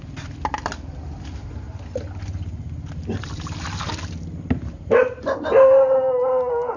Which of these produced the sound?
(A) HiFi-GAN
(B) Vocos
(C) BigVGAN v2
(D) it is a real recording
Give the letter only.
D